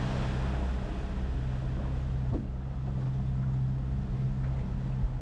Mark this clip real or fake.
real